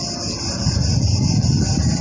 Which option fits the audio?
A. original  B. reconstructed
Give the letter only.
A